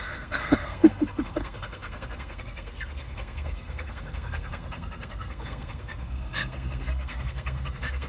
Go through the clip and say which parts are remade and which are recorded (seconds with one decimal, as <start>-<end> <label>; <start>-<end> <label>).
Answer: 0.0-8.1 remade